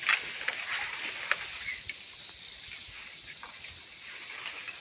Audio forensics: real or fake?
real